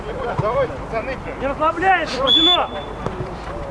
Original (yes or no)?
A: yes